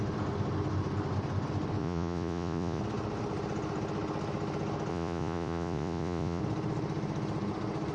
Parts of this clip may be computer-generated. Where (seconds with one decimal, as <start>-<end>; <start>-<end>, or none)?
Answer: 1.8-2.8; 4.9-6.4